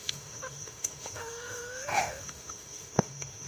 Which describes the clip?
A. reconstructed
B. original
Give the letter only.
A